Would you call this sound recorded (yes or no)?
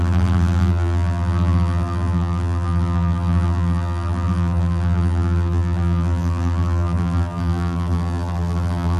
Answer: no